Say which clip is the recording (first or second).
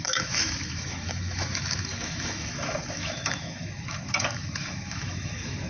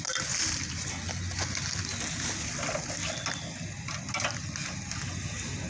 second